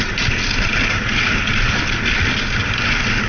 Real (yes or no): yes